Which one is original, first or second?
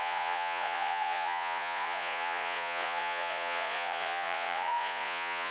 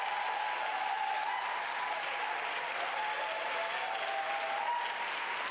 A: second